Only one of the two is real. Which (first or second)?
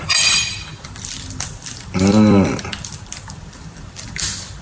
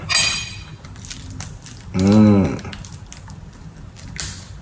second